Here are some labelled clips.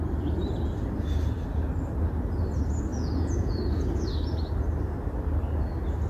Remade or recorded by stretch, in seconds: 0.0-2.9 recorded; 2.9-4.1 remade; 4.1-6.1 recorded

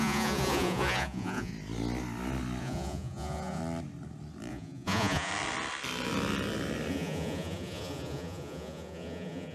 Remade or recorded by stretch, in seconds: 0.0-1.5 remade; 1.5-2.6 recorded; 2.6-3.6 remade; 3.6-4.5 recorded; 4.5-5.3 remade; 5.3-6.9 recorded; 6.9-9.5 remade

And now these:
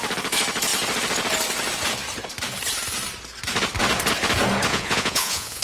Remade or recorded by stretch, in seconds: 0.0-4.7 recorded; 4.7-5.6 remade

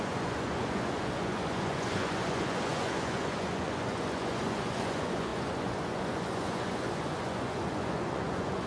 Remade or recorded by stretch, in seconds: 0.0-8.7 remade